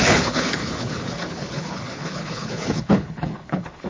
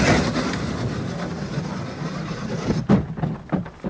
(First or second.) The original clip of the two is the second